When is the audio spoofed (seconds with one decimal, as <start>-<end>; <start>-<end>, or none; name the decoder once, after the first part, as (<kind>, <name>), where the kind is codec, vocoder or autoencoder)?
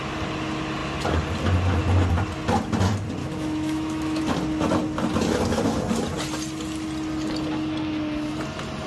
3.2-4.2 (autoencoder, DAC-VAE)